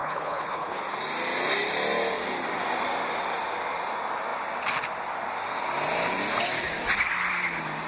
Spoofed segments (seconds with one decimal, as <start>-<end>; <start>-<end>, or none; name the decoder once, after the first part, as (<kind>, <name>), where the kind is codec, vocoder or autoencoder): 0.0-0.8 (codec, HILCodec)